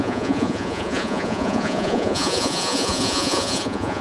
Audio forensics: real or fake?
fake